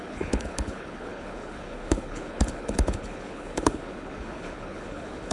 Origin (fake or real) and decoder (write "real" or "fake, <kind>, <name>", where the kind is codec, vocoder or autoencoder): fake, codec, HILCodec